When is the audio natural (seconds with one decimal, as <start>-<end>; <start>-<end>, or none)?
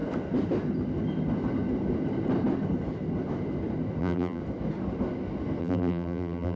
0.0-4.0; 4.4-5.6